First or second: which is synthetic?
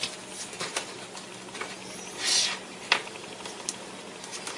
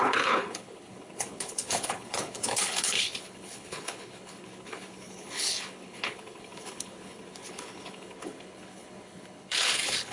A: second